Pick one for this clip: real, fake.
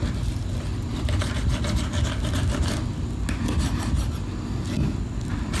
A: real